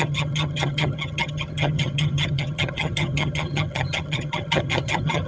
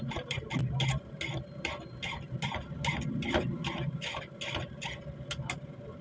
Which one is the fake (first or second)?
first